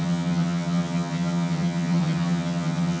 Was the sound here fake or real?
fake